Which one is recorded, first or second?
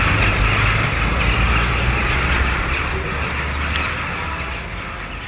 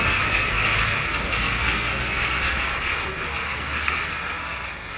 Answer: first